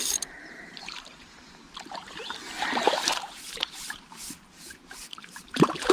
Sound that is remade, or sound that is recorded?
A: remade